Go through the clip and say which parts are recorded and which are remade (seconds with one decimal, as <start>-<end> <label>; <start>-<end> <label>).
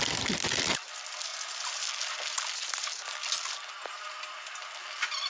0.0-5.3 recorded